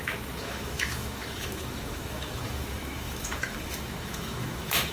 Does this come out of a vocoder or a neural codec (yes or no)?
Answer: yes